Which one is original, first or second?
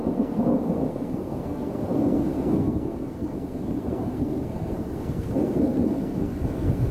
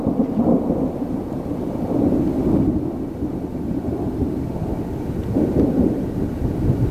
second